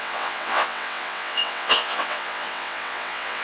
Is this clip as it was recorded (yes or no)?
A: no